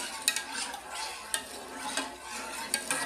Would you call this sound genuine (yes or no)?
yes